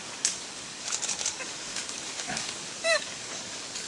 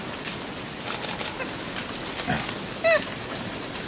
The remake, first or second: first